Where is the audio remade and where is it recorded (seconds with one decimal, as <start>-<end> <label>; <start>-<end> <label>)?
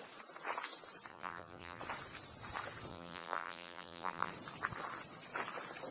0.0-1.1 recorded; 1.1-1.8 remade; 1.8-2.9 recorded; 2.9-4.3 remade; 4.3-5.9 recorded